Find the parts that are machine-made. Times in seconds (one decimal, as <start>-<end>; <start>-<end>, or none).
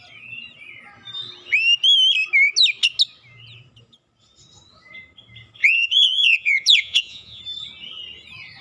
5.6-7.4